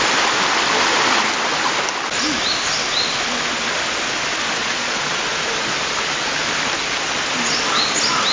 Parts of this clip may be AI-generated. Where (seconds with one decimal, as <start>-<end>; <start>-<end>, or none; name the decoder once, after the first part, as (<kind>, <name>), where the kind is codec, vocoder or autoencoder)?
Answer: 4.6-5.2 (vocoder, Vocos)

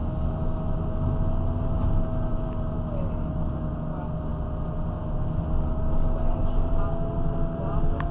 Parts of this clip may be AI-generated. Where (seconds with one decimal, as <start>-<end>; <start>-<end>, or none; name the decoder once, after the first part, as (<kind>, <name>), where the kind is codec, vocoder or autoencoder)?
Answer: none

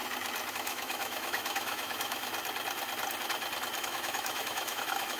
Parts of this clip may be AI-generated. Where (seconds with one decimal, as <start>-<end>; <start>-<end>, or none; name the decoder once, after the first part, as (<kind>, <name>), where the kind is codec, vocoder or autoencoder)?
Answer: 0.5-2.3 (autoencoder, DAC-VAE); 3.8-5.2

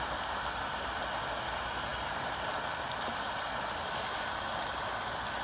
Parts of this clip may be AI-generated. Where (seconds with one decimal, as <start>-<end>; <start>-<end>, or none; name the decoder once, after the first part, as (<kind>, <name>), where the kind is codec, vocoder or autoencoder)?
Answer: none

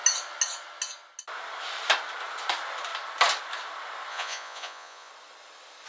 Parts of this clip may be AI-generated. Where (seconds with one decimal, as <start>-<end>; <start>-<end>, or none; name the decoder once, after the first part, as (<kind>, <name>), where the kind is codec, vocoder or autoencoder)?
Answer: 4.1-5.1 (vocoder, Vocos)

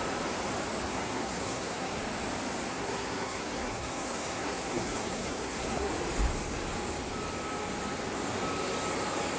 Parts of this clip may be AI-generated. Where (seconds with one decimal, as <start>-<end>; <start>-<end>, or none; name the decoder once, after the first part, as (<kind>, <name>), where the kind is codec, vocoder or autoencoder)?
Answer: 0.9-2.0 (codec, SNAC); 2.7-5.9